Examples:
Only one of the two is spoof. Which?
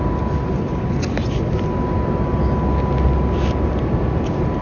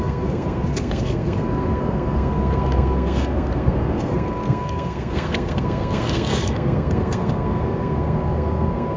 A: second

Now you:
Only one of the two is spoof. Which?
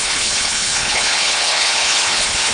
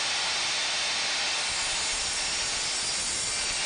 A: first